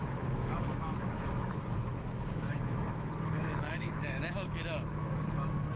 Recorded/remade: remade